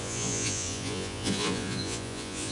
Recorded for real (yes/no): no